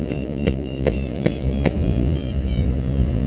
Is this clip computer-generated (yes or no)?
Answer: yes